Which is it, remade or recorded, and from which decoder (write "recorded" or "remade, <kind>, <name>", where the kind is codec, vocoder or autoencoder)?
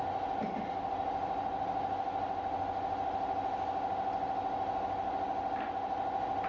recorded